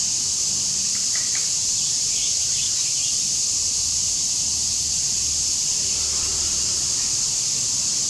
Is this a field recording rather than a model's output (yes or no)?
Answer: no